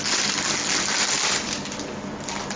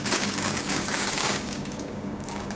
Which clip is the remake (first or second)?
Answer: second